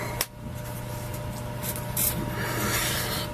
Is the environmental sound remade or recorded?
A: recorded